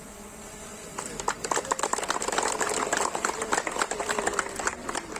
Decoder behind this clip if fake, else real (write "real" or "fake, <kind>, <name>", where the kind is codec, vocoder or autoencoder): fake, vocoder, BigVGAN v2